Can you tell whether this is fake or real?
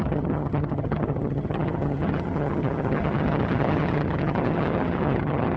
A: fake